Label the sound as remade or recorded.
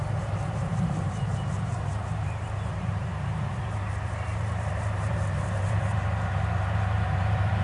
remade